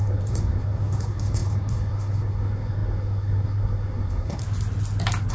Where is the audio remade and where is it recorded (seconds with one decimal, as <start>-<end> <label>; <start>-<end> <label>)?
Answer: 0.0-4.4 remade; 4.4-5.3 recorded